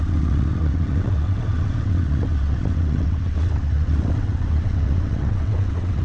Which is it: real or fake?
fake